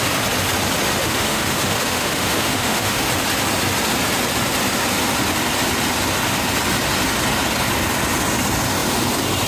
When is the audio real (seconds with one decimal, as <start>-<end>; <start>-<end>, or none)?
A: 0.0-1.0; 3.1-9.5